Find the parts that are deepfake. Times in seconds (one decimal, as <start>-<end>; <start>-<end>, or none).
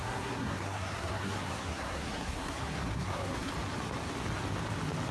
0.0-3.5